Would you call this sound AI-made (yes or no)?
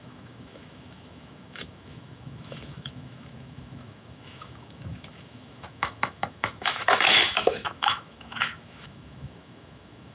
yes